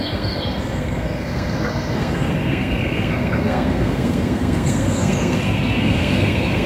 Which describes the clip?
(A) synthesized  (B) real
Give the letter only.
A